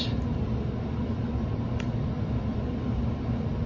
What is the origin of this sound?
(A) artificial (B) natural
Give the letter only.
B